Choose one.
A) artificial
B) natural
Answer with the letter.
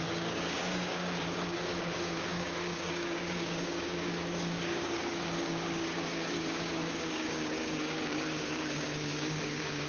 A